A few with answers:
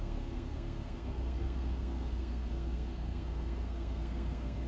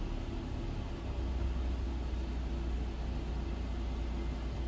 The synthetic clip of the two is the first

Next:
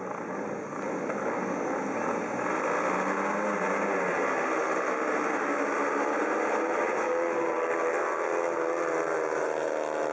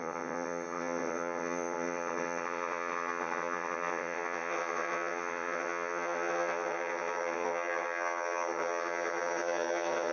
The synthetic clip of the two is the second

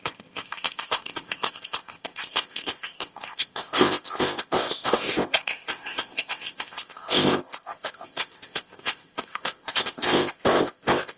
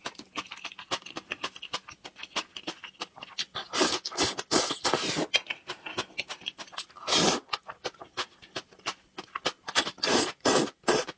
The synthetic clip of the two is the first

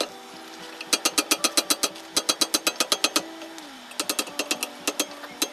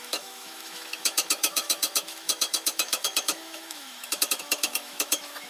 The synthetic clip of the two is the second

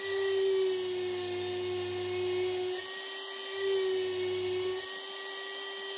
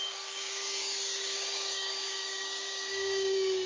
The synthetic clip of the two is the second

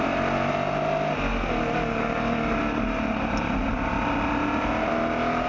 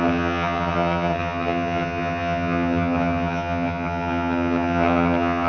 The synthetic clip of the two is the second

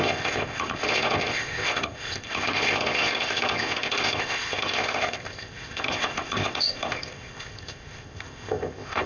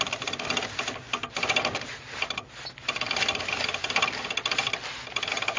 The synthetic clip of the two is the first